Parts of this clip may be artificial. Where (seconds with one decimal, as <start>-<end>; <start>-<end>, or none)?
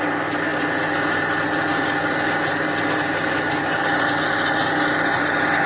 0.0-0.5; 2.9-5.7